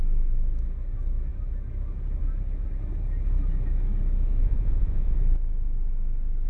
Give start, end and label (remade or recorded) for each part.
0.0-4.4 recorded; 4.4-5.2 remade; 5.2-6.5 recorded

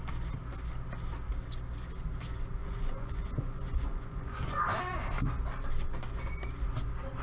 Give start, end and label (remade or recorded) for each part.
0.0-2.6 recorded; 2.6-4.7 remade; 4.7-7.2 recorded

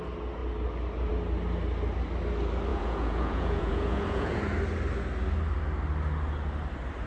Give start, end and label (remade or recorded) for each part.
0.0-2.7 recorded; 2.7-4.4 remade; 4.4-7.1 recorded

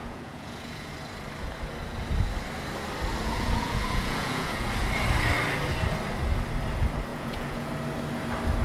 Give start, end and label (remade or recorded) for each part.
0.0-0.9 remade; 0.9-3.2 recorded; 3.2-4.7 remade; 4.7-7.1 recorded; 7.1-7.7 remade; 7.7-8.6 recorded

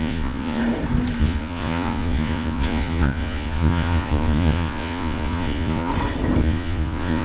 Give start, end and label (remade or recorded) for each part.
0.0-0.6 remade; 0.6-1.2 recorded; 1.2-5.9 remade; 5.9-6.4 recorded; 6.4-7.2 remade

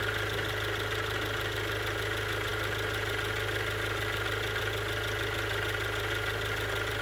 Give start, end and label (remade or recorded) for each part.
0.0-7.0 recorded

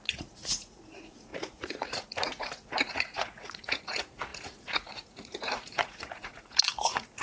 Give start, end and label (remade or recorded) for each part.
0.0-7.2 remade